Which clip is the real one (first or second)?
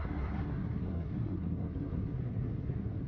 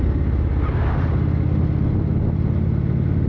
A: second